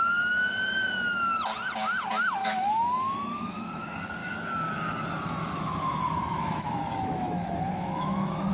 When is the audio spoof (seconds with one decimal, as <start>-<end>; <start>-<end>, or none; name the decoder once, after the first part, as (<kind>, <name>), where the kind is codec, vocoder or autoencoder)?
2.4-3.7 (autoencoder, DAC-VAE); 4.2-4.9; 5.4-8.5